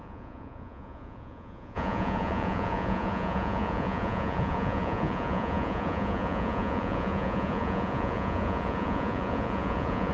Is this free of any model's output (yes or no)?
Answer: no